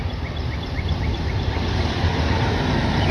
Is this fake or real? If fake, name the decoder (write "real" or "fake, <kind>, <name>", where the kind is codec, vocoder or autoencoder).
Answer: fake, vocoder, BigVGAN v2